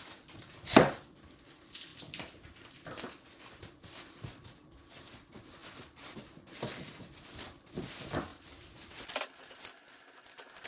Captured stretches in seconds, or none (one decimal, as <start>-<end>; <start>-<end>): 0.0-10.7